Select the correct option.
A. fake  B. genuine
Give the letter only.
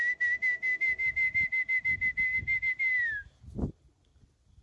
B